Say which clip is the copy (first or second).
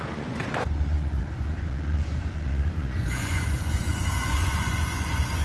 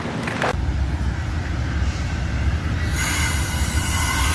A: first